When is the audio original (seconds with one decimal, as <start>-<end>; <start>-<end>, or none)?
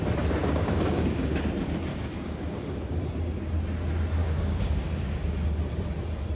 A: 0.0-0.4; 1.4-1.9; 3.0-4.2; 5.3-6.3